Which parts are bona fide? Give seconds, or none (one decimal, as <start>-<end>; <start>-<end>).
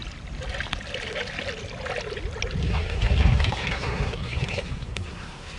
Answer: 0.0-2.6